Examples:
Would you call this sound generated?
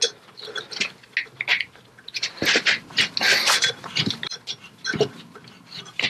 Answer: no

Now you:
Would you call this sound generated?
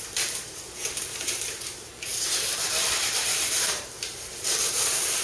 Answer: yes